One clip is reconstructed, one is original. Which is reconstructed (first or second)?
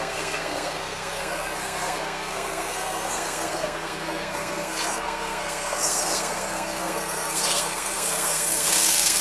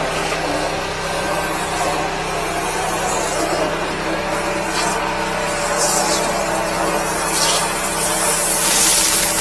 first